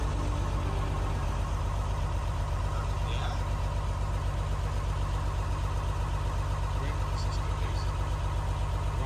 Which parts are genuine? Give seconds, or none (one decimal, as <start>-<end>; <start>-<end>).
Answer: 0.0-1.2; 2.6-9.1